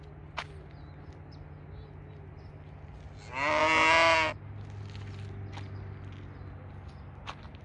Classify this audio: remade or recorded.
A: recorded